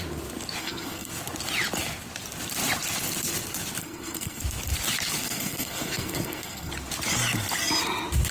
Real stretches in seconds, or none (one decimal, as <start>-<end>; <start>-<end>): 0.0-0.6; 1.1-3.8; 4.4-5.2; 6.7-8.3